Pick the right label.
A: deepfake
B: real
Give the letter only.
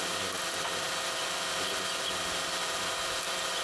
B